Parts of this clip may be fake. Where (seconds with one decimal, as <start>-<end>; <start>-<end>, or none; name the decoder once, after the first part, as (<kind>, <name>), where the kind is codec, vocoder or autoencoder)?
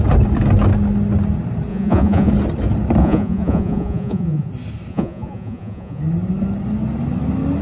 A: 1.7-2.3 (vocoder, Vocos); 3.0-4.5; 4.9-6.0